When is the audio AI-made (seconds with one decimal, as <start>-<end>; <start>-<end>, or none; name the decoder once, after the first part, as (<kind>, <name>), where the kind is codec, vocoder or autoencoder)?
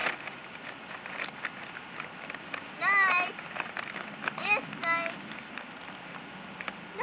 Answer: none